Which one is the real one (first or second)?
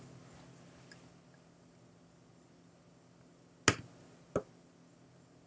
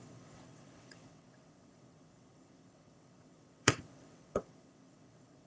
first